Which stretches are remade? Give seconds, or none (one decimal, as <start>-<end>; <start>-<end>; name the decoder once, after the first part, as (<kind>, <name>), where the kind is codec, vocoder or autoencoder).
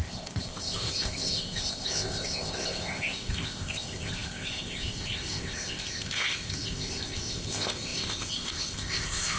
0.0-9.4 (codec, ZipCodec)